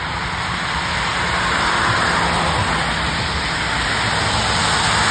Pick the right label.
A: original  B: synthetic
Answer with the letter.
A